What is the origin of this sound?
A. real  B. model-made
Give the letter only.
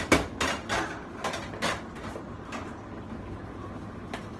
A